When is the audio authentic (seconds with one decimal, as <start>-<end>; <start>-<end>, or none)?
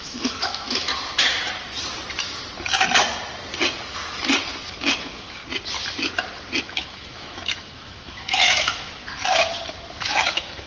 0.9-5.0; 5.4-6.6; 9.0-9.9